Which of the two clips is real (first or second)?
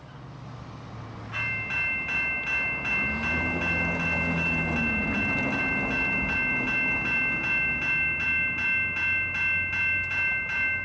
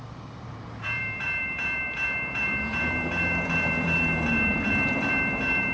first